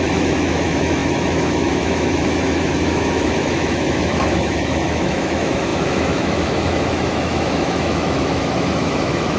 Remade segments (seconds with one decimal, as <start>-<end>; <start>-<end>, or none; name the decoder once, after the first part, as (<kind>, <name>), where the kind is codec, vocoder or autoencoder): 0.0-9.4 (autoencoder, DAC-VAE)